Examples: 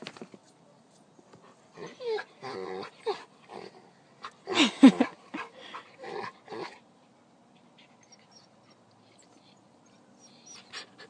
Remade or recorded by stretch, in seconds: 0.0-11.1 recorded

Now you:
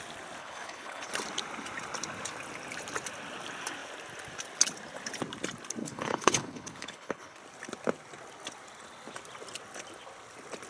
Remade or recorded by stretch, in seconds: 0.0-0.4 recorded; 0.4-1.1 remade; 1.1-5.8 recorded; 5.8-7.4 remade; 7.4-10.7 recorded

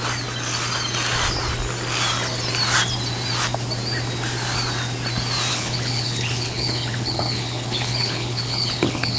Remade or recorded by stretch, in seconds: 0.0-5.5 recorded; 5.5-9.2 remade

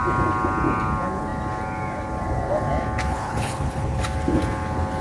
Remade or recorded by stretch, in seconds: 0.0-3.1 recorded; 3.1-4.0 remade; 4.0-5.0 recorded

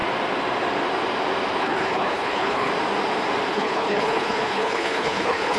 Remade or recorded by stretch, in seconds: 0.0-1.6 recorded; 1.6-2.7 remade; 2.7-3.5 recorded; 3.5-5.6 remade

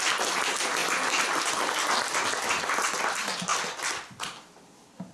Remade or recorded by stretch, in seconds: 0.0-5.1 recorded

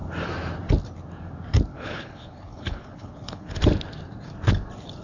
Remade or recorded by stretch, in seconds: 0.0-1.7 recorded; 1.7-3.5 remade; 3.5-5.0 recorded

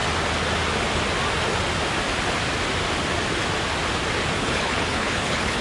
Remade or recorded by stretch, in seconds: 0.0-4.4 recorded; 4.4-5.6 remade